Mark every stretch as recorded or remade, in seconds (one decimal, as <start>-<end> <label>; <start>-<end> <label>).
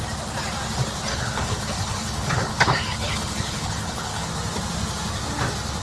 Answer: 0.0-1.1 recorded; 1.1-4.3 remade; 4.3-5.8 recorded